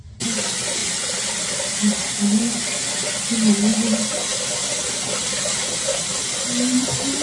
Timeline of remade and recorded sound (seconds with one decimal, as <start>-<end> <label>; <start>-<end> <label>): 0.0-0.8 recorded; 0.8-2.2 remade; 2.2-5.2 recorded; 5.2-6.1 remade; 6.1-7.2 recorded